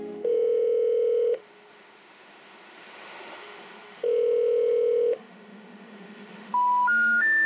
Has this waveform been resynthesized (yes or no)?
yes